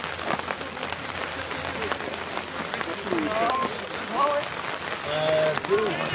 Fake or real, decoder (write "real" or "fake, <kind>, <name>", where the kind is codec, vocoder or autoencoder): real